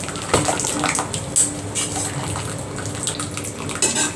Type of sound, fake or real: real